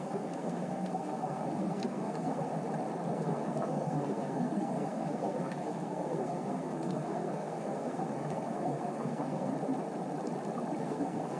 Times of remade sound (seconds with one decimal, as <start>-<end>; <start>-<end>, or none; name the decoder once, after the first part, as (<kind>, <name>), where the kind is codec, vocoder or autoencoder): 0.0-2.5 (codec, SNAC); 3.1-9.5; 10.8-11.4